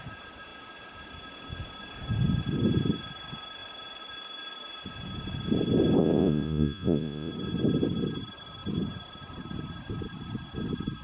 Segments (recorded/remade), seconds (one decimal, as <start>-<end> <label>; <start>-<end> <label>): 0.0-6.0 recorded; 6.0-7.3 remade; 7.3-11.0 recorded